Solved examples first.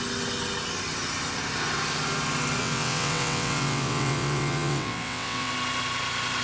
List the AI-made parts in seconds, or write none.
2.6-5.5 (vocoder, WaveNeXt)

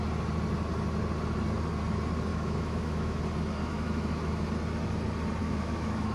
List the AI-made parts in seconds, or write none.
2.3-3.2 (autoencoder, DAC-VAE); 3.6-4.3; 5.4-6.1